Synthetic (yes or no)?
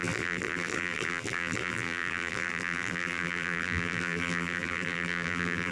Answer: yes